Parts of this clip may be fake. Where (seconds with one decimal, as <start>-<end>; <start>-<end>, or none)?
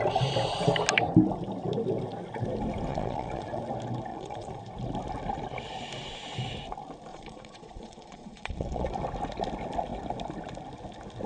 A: 2.9-3.6; 4.1-4.6; 7.1-8.9